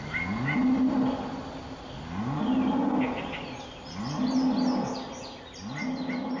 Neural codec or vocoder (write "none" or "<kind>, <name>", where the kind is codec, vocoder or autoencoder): none